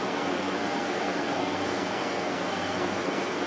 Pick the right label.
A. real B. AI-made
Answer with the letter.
B